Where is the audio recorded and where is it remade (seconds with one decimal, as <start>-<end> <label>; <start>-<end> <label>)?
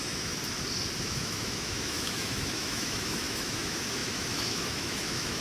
0.0-0.4 remade; 0.4-1.0 recorded; 1.0-5.4 remade